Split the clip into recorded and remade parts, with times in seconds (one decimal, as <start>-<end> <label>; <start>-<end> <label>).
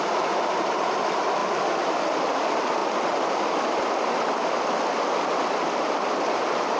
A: 0.0-1.4 remade; 1.4-2.2 recorded; 2.2-6.8 remade